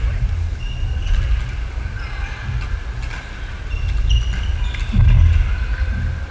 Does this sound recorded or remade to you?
recorded